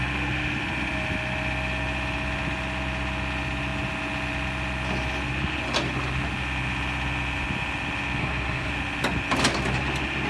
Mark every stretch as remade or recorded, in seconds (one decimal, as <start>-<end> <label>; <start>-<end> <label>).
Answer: 0.0-8.2 recorded; 8.2-8.7 remade; 8.7-10.3 recorded